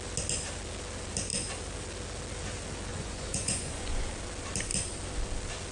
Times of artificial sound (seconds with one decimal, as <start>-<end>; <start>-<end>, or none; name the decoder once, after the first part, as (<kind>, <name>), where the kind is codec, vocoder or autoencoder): 2.9-4.1 (vocoder, Vocos)